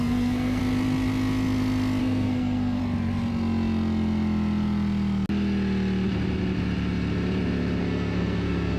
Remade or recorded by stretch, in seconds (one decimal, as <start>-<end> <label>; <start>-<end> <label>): 0.0-0.6 remade; 0.6-2.0 recorded; 2.0-2.8 remade; 2.8-7.8 recorded; 7.8-8.8 remade